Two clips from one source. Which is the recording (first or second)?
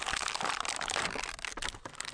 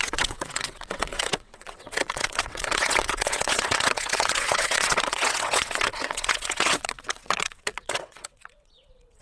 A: first